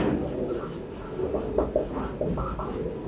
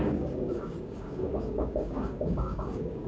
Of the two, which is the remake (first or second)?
second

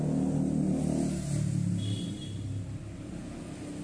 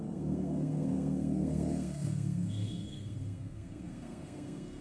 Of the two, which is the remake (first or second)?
second